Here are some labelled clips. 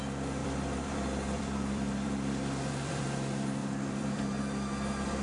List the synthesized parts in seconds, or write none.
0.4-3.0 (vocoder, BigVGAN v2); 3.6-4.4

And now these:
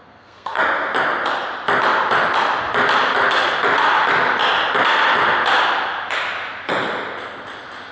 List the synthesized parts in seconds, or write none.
0.0-0.6 (codec, SNAC)